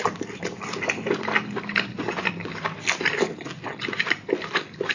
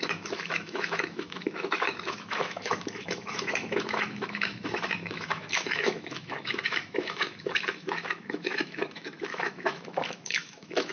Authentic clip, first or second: first